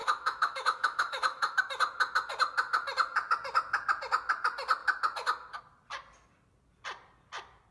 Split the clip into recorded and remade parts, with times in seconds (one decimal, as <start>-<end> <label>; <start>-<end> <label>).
0.0-1.6 remade; 1.6-7.7 recorded